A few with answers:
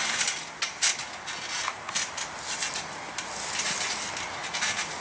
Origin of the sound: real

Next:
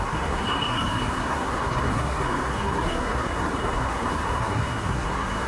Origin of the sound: fake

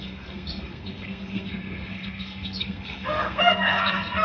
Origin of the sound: fake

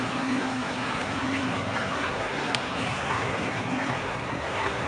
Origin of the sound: fake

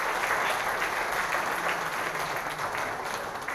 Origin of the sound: real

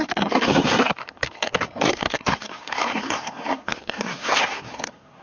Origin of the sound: fake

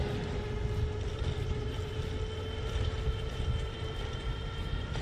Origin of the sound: real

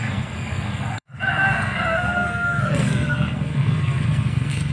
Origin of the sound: fake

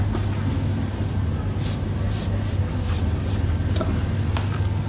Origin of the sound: real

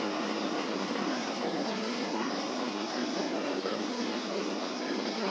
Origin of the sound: fake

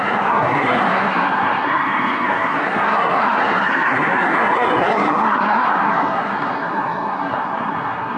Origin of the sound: fake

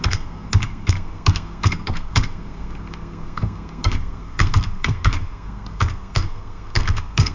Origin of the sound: fake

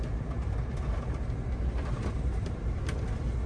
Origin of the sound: real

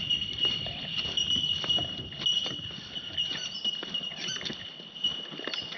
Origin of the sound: real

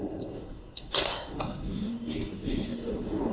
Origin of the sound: fake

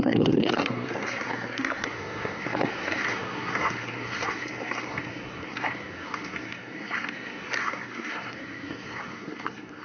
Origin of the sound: fake